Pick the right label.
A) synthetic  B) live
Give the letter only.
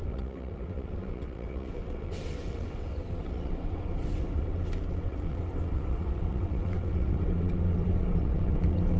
A